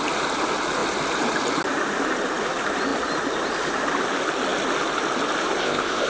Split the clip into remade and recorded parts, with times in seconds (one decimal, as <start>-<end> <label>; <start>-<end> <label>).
0.0-5.6 recorded; 5.6-6.1 remade